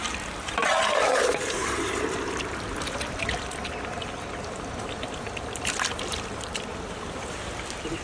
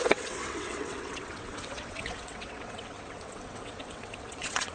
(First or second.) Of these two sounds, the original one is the first